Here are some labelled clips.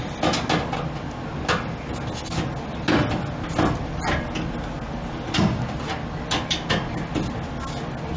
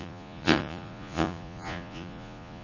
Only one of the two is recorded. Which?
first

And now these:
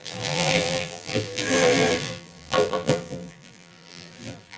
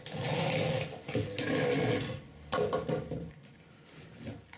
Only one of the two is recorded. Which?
second